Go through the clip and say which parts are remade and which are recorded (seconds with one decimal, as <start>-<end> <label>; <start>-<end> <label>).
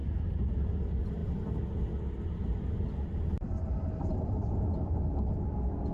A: 0.0-5.9 recorded